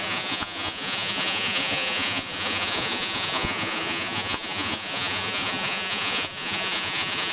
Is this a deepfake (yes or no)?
yes